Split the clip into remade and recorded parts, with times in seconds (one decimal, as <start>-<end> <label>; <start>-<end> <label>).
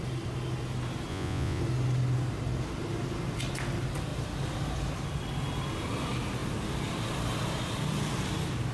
0.0-1.1 recorded; 1.1-1.6 remade; 1.6-8.7 recorded